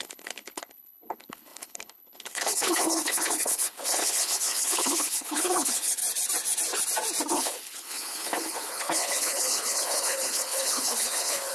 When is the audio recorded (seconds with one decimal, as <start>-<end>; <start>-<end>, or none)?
6.0-7.3